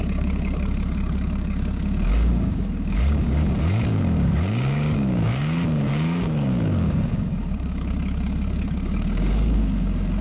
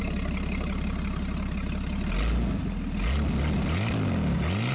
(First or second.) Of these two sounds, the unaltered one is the second